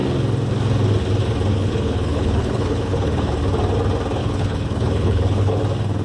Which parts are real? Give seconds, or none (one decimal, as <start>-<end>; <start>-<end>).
0.0-1.5; 3.3-4.2; 5.6-6.0